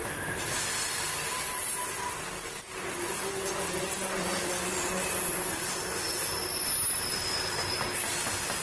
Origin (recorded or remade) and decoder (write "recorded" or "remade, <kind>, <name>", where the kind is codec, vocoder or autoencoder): recorded